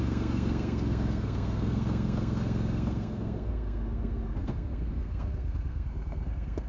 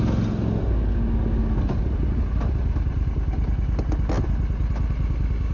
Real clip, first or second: second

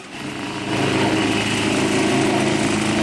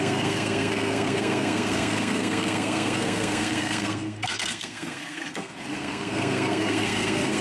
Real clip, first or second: first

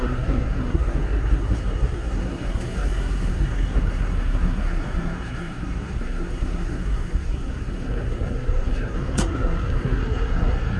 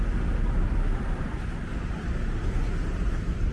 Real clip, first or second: second